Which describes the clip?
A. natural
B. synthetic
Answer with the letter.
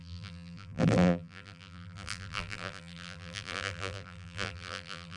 B